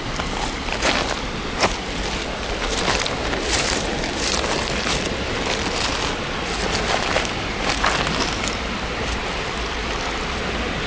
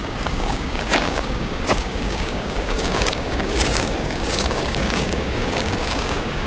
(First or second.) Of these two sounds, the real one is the first